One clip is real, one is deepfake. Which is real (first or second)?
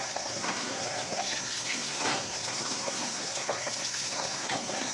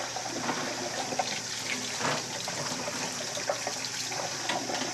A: second